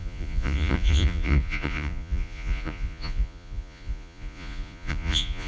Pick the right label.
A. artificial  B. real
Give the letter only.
A